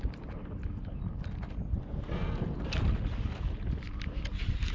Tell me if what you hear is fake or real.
real